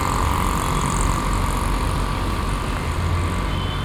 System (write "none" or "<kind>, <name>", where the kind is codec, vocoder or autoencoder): none